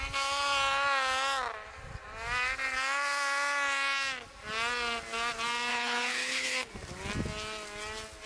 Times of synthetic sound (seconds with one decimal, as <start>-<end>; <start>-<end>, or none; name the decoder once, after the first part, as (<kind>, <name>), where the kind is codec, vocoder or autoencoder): 5.7-6.7 (codec, HILCodec)